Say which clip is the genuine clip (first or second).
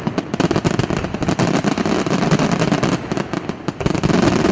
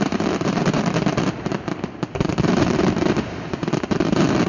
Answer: first